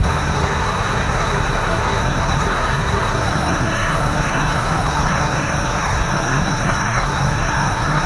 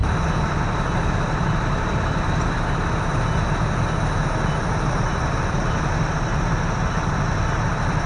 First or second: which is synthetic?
first